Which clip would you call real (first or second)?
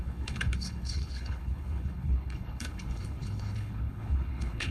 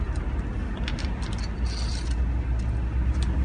second